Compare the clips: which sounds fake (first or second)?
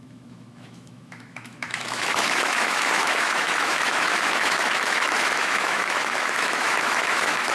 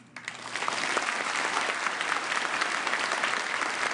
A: first